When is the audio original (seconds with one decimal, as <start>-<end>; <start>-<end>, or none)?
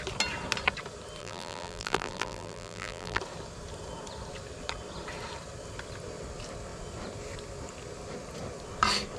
0.0-1.2; 3.2-9.2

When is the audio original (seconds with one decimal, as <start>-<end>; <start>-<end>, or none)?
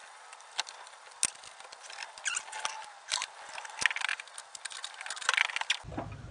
0.0-6.3